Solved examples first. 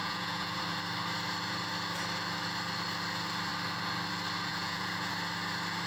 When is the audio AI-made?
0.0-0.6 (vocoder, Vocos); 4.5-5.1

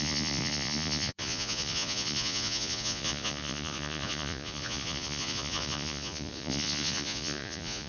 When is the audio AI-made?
0.0-7.9 (vocoder, Vocos)

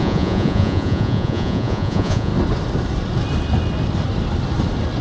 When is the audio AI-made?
0.0-2.3 (vocoder, Vocos)

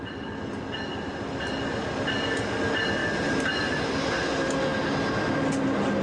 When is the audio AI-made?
none

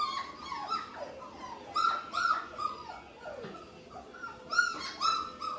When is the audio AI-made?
2.0-3.6 (vocoder, Vocos)

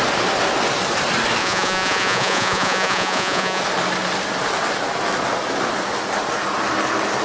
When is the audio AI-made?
1.4-3.6 (vocoder, Vocos)